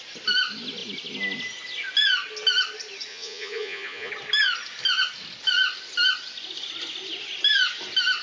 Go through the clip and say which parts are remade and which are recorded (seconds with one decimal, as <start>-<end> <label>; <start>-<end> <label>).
0.0-3.1 recorded; 3.1-4.1 remade; 4.1-8.2 recorded